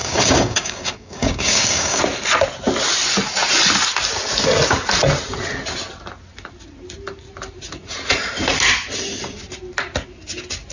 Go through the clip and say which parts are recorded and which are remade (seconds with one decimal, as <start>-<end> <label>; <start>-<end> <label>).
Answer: 0.0-2.0 remade; 2.0-10.7 recorded